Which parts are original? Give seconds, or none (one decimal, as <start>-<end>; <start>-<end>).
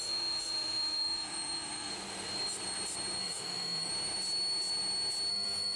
1.9-3.2; 3.9-5.3